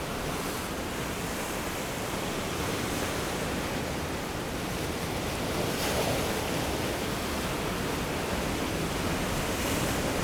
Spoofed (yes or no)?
no